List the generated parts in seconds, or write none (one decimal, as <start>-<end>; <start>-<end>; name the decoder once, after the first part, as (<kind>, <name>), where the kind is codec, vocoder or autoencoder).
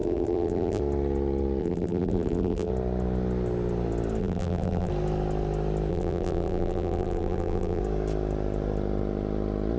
0.0-0.8 (vocoder, BigVGAN v2); 1.6-2.7; 4.2-4.9; 5.9-7.8